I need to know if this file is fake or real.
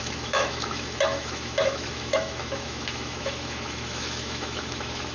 fake